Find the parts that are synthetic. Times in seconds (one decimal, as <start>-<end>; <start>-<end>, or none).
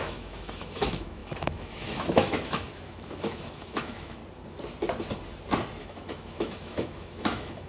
0.0-4.2; 5.8-7.7